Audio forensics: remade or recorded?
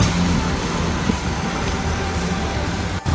recorded